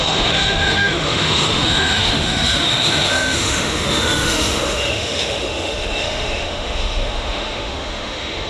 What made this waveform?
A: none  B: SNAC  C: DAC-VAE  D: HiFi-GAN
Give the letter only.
C